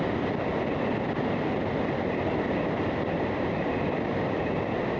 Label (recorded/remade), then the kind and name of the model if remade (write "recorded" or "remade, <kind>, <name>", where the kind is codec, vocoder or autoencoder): recorded